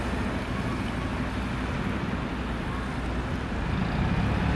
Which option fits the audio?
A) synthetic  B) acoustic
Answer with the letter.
B